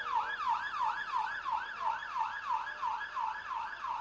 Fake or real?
real